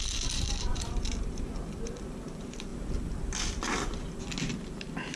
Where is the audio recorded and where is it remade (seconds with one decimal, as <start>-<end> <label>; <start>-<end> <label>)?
0.0-2.7 remade; 2.7-4.4 recorded; 4.4-5.2 remade